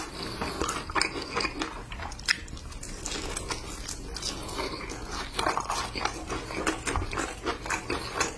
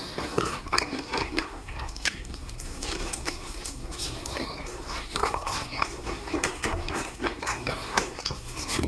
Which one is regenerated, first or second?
second